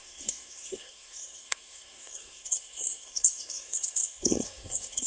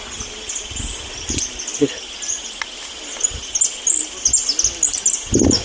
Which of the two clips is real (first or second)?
second